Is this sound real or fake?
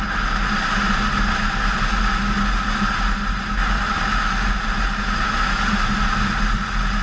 real